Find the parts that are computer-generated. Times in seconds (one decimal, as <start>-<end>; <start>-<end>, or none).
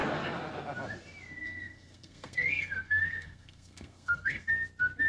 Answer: 1.4-4.5